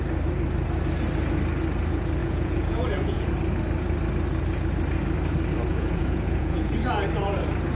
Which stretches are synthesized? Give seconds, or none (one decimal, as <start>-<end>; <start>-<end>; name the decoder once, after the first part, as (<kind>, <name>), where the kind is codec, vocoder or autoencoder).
2.2-3.3 (vocoder, Vocos); 5.7-6.7